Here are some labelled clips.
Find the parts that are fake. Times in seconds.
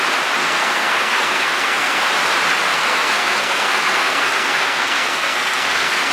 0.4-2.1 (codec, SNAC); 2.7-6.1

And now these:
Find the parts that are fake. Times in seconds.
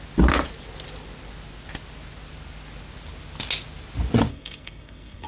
4.3-5.3 (codec, SNAC)